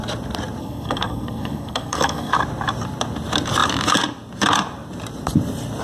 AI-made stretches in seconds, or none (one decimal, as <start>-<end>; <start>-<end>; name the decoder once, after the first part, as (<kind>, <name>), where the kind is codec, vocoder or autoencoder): 0.6-2.3 (codec, SNAC)